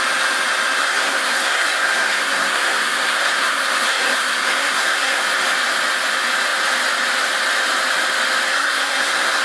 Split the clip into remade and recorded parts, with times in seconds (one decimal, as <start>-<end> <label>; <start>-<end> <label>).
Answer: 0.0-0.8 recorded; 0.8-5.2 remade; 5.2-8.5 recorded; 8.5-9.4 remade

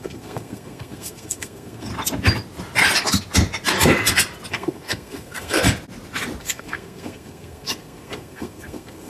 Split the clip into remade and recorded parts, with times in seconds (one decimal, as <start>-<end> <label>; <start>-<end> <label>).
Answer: 0.0-1.9 remade; 1.9-4.5 recorded; 4.5-5.6 remade; 5.6-6.4 recorded; 6.4-9.1 remade

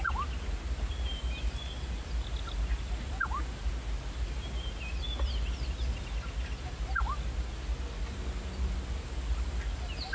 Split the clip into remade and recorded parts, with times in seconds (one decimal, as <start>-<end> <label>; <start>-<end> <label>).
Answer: 0.0-10.1 recorded

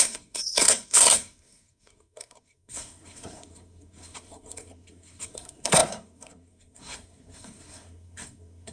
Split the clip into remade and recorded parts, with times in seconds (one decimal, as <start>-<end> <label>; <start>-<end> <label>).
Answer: 0.0-8.7 remade

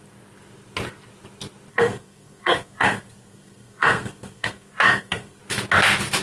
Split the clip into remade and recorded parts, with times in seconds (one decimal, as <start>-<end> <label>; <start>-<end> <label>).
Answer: 0.0-1.7 recorded; 1.7-5.4 remade; 5.4-6.2 recorded